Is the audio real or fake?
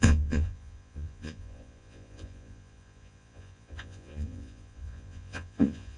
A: fake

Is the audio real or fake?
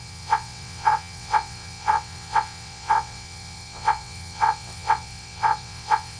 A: fake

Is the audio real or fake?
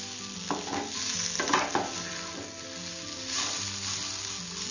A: real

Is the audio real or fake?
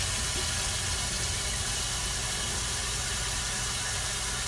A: real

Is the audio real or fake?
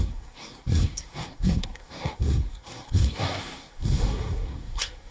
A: fake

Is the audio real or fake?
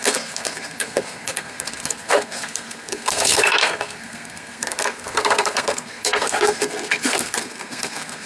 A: fake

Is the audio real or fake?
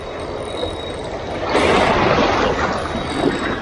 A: real